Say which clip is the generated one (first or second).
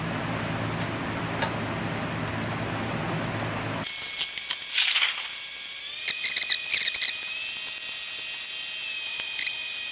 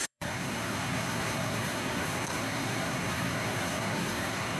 second